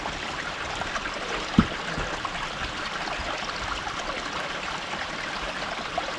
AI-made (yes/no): no